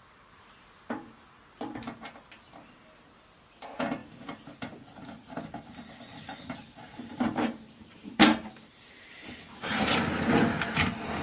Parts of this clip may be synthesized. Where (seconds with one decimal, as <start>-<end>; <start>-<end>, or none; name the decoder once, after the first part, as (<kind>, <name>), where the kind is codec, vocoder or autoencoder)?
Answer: 0.0-2.1 (vocoder, BigVGAN v2); 4.0-4.7; 6.1-9.9